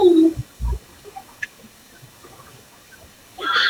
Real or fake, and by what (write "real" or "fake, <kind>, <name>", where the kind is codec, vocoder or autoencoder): fake, codec, DAC